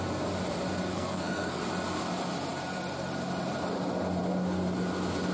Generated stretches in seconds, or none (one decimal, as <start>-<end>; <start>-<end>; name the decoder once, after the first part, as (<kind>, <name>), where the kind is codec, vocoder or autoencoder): 0.9-1.6 (codec, SNAC)